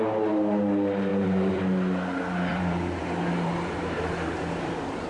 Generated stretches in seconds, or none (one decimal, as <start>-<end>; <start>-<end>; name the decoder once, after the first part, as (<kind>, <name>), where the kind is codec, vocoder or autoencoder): 1.1-1.6 (vocoder, BigVGAN v2); 2.5-5.1